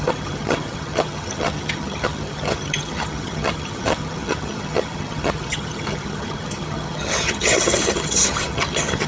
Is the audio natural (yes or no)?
no